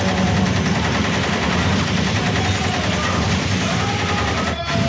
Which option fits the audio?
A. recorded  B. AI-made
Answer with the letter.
A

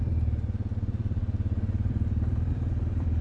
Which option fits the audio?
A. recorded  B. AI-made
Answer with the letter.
B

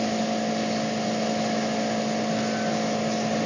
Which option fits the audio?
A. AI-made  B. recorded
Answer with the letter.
B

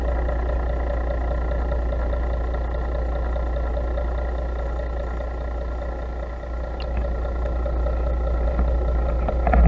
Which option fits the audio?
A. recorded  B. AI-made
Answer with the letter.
A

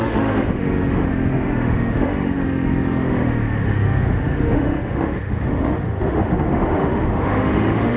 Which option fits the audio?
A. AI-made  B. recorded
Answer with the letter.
A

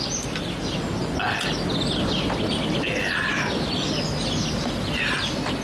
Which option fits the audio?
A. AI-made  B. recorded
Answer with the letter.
B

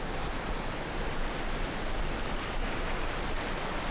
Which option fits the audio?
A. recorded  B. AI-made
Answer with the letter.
A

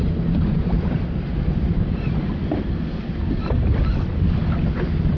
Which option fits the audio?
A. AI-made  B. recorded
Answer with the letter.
B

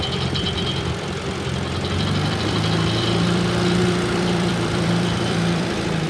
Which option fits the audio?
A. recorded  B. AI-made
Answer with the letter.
B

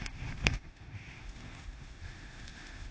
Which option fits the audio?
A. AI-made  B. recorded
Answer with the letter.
A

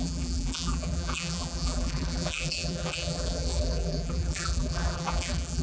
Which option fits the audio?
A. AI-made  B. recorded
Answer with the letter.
A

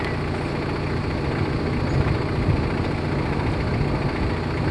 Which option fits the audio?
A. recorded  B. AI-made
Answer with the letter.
A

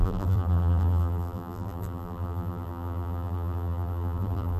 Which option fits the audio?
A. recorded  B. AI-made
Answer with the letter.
B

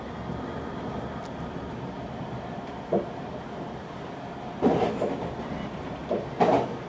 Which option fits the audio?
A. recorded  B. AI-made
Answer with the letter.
A